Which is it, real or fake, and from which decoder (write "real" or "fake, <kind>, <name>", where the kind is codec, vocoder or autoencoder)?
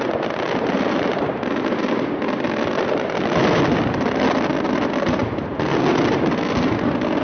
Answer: real